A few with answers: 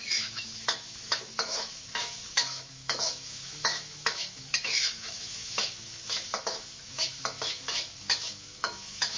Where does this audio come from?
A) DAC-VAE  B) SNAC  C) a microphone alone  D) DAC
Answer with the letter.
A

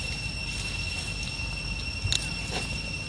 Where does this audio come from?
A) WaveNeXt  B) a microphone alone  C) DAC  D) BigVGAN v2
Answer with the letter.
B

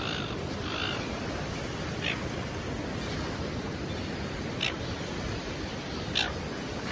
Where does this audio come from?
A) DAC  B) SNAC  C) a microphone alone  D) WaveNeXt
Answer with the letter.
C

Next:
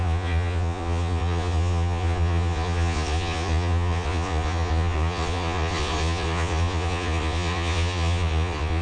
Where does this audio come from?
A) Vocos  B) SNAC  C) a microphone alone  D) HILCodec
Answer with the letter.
A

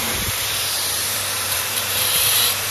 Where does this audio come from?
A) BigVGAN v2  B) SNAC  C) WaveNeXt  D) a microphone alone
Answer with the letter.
A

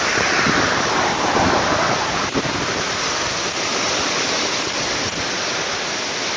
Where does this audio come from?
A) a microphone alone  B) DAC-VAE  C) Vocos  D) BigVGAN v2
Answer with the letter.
A